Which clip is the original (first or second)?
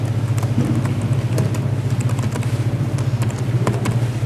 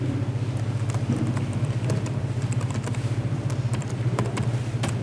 first